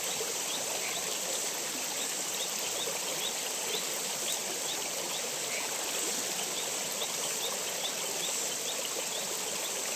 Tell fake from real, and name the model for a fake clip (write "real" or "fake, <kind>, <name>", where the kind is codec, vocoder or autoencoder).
real